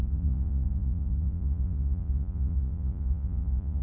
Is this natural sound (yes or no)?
no